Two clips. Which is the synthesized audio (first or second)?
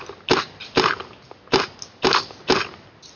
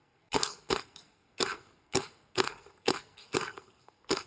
second